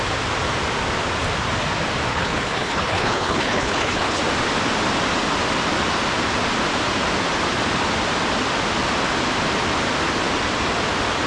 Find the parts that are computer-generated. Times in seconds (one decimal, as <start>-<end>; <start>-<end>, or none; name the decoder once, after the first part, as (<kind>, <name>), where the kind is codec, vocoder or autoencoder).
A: 2.1-4.2 (codec, HILCodec)